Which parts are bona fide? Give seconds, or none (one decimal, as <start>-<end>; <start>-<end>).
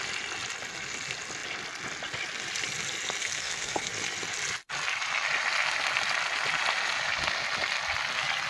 0.0-3.2; 3.9-8.5